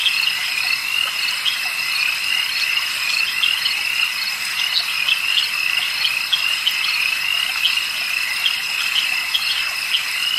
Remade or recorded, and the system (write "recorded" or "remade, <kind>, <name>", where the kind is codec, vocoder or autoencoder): recorded